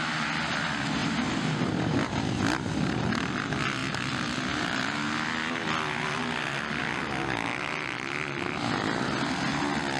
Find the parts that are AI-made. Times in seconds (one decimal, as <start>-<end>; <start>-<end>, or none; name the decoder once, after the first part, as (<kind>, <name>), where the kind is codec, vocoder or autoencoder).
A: none